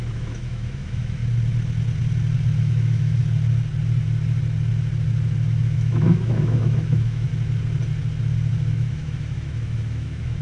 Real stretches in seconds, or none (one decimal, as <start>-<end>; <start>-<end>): 1.2-2.6; 3.2-5.6; 7.3-8.7